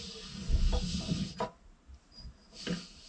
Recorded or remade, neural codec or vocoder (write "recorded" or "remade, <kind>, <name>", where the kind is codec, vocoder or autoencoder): recorded